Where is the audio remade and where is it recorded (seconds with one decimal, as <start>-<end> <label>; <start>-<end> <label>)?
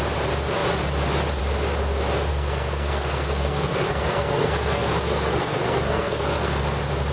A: 0.0-2.3 recorded; 2.3-6.6 remade; 6.6-7.1 recorded